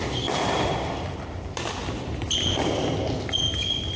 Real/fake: fake